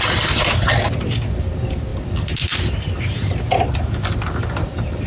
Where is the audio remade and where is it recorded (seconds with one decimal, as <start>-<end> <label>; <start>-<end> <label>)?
0.0-5.1 recorded